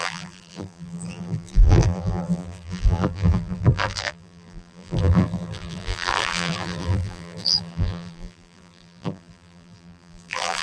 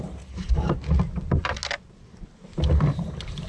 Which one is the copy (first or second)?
first